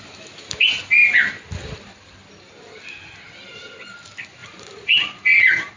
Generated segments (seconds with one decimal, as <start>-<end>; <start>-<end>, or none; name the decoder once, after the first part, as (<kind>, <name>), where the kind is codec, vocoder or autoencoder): 4.4-5.3 (vocoder, Vocos)